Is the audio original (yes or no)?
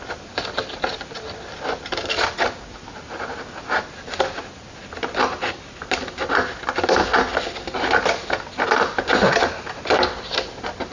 yes